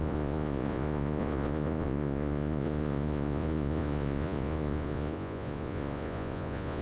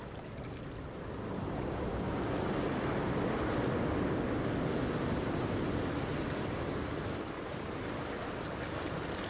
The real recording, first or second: second